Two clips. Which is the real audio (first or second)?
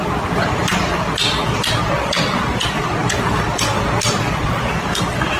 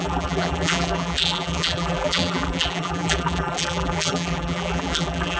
first